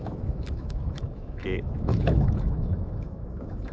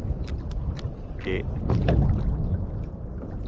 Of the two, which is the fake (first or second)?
first